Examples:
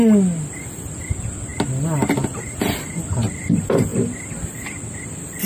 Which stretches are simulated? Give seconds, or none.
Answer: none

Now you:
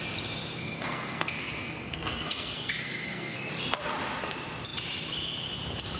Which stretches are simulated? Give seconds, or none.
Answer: 0.6-3.5 (codec, SNAC)

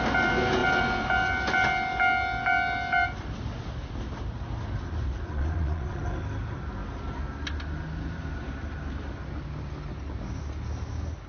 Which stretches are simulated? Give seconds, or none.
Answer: 5.3-6.0 (vocoder, Vocos)

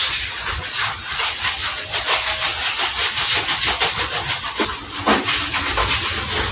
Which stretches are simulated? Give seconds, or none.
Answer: 1.0-1.8 (vocoder, Vocos)

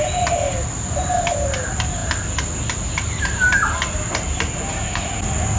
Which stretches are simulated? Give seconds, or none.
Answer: none

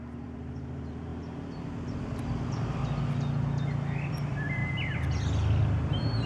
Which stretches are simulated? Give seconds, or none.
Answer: 0.0-1.1 (vocoder, BigVGAN v2); 2.0-2.8; 4.1-4.6; 5.6-6.3

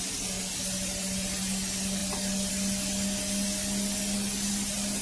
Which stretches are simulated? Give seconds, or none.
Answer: none

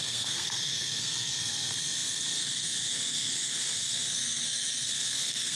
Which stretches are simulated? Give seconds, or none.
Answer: 0.0-5.6 (codec, SNAC)